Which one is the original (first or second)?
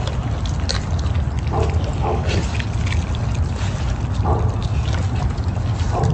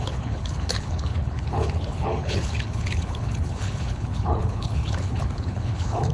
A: first